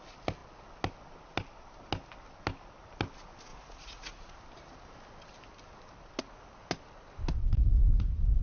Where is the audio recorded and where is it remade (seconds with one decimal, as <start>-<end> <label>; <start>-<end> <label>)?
0.0-3.5 recorded; 3.5-4.4 remade; 4.4-8.4 recorded

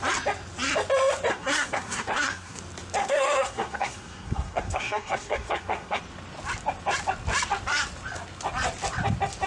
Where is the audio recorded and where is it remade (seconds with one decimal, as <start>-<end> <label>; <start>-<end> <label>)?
0.0-1.3 recorded; 1.3-2.6 remade; 2.6-3.0 recorded; 3.0-6.0 remade; 6.0-9.5 recorded

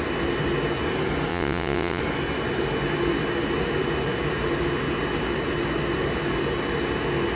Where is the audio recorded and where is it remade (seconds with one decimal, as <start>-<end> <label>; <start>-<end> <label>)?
0.0-1.3 recorded; 1.3-2.0 remade; 2.0-7.4 recorded

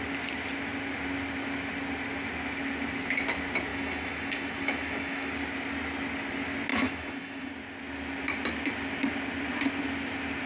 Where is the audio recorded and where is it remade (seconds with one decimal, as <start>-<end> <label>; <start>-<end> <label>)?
0.0-3.7 recorded; 3.7-5.3 remade; 5.3-6.7 recorded; 6.7-7.5 remade; 7.5-10.5 recorded

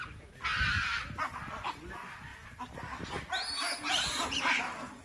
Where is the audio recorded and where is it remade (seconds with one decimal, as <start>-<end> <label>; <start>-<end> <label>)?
0.0-5.0 recorded

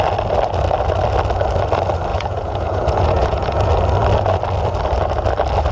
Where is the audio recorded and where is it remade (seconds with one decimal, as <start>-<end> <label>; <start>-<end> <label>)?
0.0-2.1 recorded; 2.1-3.7 remade; 3.7-5.7 recorded

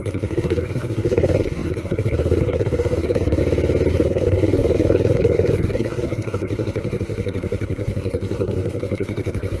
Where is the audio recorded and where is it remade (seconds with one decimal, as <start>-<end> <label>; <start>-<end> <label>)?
0.0-3.4 remade; 3.4-3.9 recorded; 3.9-9.6 remade